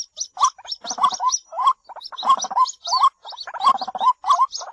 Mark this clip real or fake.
real